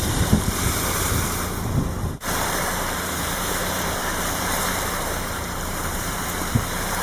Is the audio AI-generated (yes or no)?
yes